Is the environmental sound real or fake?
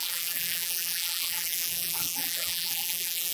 fake